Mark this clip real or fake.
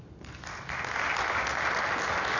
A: real